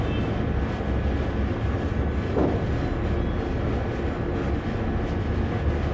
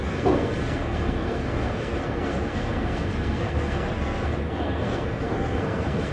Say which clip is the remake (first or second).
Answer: second